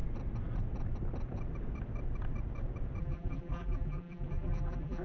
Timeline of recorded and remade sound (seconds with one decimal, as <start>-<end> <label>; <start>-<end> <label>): 0.0-3.0 recorded; 3.0-5.0 remade